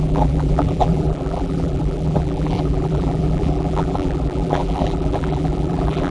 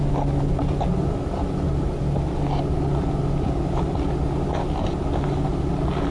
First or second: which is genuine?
second